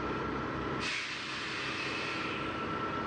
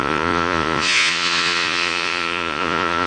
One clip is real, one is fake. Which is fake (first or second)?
second